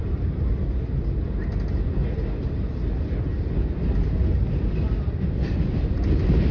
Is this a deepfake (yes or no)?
no